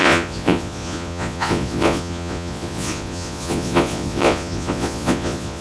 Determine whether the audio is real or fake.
fake